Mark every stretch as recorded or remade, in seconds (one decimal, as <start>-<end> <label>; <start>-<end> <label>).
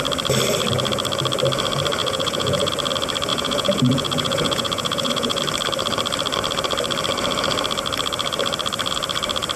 0.0-2.0 recorded; 2.0-2.7 remade; 2.7-3.3 recorded; 3.3-5.4 remade; 5.4-9.6 recorded